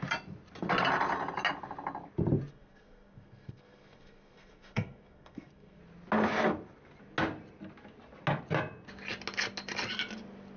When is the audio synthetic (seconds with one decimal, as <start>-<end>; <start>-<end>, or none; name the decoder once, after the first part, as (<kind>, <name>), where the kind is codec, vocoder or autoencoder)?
2.5-5.8 (codec, SNAC)